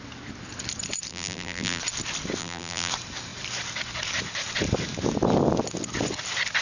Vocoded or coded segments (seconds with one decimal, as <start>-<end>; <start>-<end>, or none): 1.1-1.8; 2.4-2.9